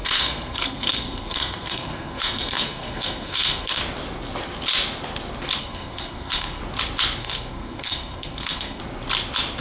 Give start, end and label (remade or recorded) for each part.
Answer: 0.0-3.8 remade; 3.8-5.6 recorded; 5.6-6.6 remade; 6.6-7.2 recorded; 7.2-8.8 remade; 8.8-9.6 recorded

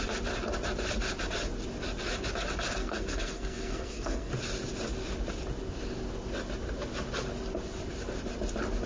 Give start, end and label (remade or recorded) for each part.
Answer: 0.0-2.8 recorded; 2.8-4.3 remade; 4.3-8.9 recorded

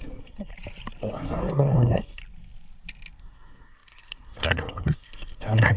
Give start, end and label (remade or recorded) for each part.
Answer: 0.0-0.5 remade; 0.5-1.0 recorded; 1.0-2.2 remade; 2.2-3.2 recorded; 3.2-5.8 remade

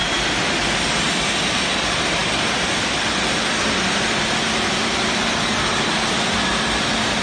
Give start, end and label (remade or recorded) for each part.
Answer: 0.0-7.2 recorded

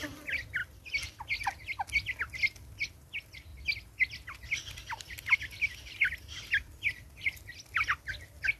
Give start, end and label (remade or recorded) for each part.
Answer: 0.0-8.6 recorded